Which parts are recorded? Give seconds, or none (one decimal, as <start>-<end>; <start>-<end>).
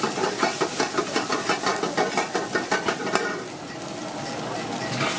0.0-5.2